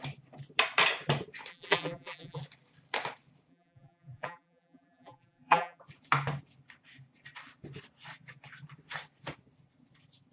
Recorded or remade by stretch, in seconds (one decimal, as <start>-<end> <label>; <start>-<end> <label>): 0.0-1.5 recorded; 1.5-2.4 remade; 2.4-3.5 recorded; 3.5-5.8 remade; 5.8-10.3 recorded